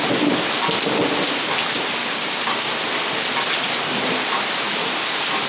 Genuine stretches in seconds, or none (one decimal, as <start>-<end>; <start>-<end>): 0.0-2.0; 2.7-5.5